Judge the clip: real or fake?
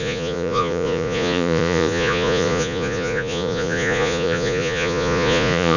fake